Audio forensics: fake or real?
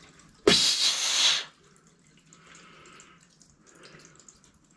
real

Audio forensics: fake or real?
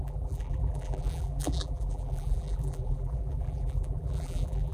fake